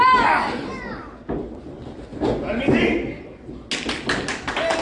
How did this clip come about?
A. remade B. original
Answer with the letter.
B